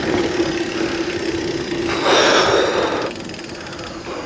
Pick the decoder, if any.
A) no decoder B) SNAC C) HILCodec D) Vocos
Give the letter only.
A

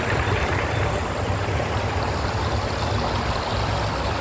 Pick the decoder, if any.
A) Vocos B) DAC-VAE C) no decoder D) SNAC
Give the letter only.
C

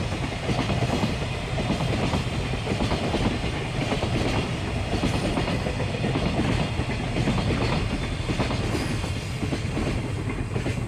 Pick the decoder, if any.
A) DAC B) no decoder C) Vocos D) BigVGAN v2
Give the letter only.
B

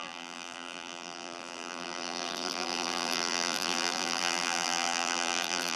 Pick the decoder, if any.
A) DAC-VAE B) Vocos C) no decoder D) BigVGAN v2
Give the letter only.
D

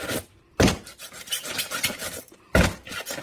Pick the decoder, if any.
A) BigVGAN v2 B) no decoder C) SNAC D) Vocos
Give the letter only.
B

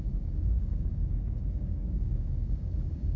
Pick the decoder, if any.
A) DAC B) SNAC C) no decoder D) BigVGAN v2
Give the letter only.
A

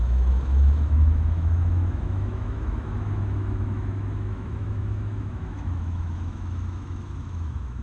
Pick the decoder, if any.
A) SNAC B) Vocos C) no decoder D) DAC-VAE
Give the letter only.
D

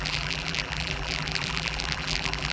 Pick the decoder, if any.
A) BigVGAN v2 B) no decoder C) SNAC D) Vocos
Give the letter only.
A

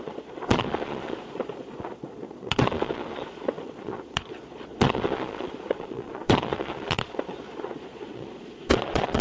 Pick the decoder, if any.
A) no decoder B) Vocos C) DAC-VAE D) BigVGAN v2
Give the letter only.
B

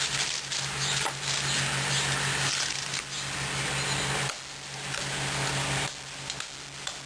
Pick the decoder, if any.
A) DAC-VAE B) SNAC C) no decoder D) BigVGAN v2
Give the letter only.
C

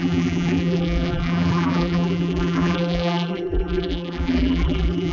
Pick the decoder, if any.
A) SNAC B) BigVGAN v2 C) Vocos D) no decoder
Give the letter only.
B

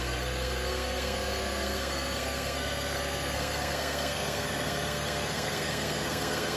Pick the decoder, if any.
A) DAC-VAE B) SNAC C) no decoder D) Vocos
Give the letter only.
B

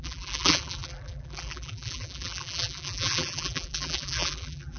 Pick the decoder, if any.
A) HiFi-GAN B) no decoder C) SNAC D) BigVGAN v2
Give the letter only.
D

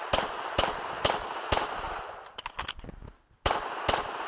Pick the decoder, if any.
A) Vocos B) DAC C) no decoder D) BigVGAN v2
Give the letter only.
C